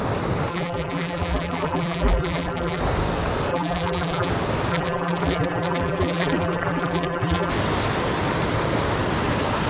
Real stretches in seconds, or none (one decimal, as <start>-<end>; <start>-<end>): 0.0-0.5; 2.8-3.5; 4.3-4.7; 7.5-9.7